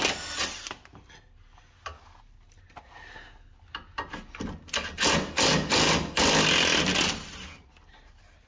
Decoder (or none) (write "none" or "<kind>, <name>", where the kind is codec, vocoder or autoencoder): none